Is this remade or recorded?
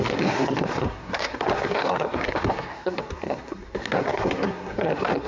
remade